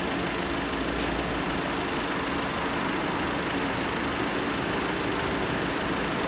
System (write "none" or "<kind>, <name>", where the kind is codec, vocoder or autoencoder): none